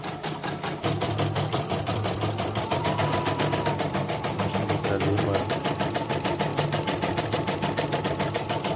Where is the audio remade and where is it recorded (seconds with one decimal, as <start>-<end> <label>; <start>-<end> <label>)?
0.0-3.0 remade; 3.0-3.7 recorded; 3.7-8.8 remade